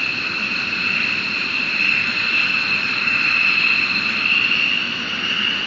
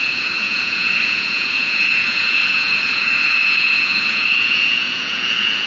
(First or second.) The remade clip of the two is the second